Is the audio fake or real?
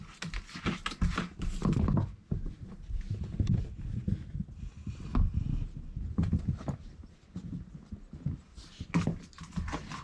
real